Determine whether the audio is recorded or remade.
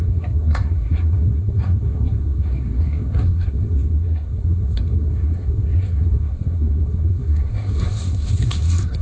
remade